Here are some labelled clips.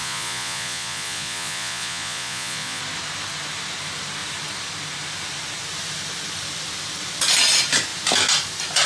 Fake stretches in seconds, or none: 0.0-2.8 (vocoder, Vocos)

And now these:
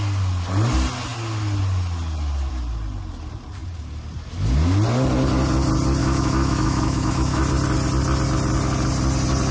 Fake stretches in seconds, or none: 6.0-7.4 (autoencoder, DAC-VAE)

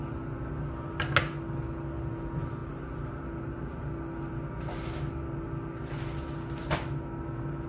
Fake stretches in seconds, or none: none

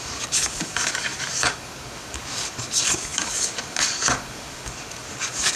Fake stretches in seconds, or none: 0.0-5.6 (codec, DAC)

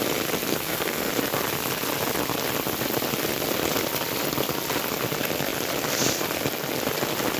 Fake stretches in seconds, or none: 0.5-1.1 (codec, SNAC)

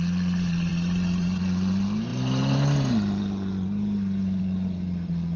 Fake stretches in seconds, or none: none

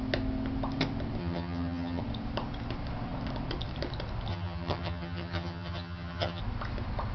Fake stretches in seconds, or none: 1.2-2.0 (vocoder, HiFi-GAN); 4.3-6.4

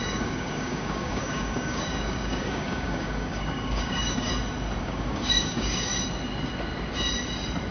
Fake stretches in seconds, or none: 0.0-4.3 (codec, DAC); 4.8-5.9